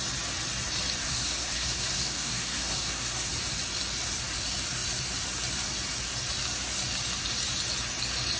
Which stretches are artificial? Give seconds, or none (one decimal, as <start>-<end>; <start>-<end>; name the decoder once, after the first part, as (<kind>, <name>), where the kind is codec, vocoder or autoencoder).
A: 1.0-3.3 (codec, SNAC)